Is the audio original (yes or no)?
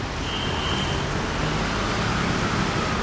yes